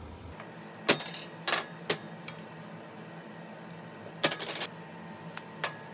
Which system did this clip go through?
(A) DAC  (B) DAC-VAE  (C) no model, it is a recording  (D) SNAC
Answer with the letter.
C